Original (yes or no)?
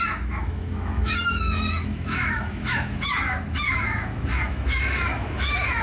no